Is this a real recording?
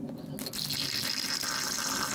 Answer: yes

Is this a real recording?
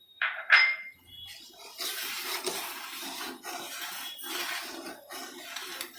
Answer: no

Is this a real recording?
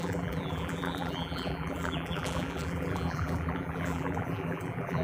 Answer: no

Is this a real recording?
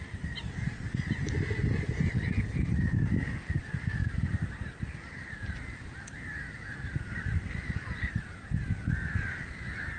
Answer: yes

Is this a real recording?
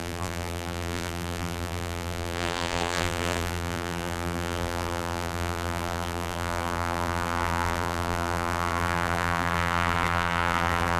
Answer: no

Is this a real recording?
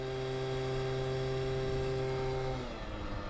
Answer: yes